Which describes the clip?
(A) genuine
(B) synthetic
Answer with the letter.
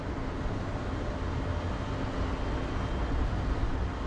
A